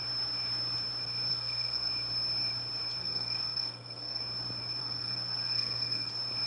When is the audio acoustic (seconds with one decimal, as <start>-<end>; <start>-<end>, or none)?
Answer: 0.0-1.3; 1.9-3.0; 4.2-4.8; 6.1-6.5